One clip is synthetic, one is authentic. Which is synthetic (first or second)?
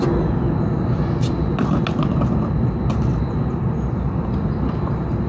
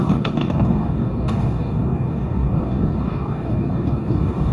second